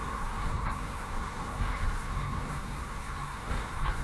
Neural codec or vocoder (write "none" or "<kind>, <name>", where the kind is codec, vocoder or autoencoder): codec, SNAC